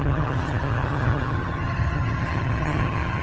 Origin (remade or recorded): remade